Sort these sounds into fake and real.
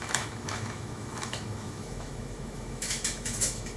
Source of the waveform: fake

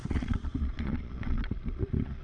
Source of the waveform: fake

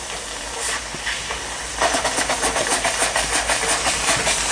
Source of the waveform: real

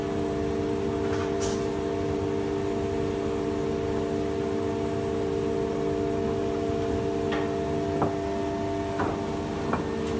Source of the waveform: real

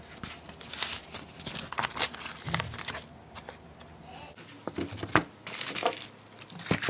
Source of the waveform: real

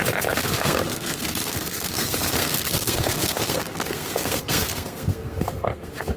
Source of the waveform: fake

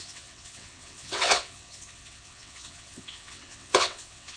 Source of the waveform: fake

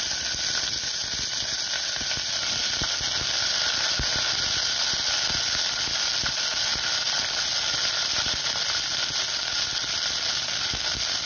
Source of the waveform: real